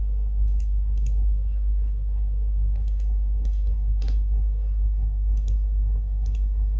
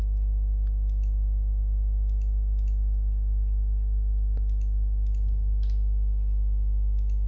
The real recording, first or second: second